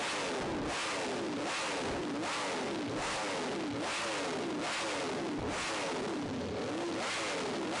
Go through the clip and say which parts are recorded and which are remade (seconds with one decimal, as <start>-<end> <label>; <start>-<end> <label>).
0.0-7.8 recorded